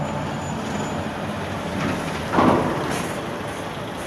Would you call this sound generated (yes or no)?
no